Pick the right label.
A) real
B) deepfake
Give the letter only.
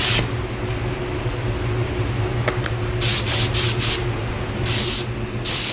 A